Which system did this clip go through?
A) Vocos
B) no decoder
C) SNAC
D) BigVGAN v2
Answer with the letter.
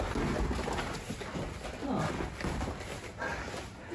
B